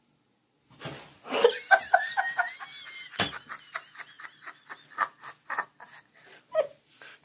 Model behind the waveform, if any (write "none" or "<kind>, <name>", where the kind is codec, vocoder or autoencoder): none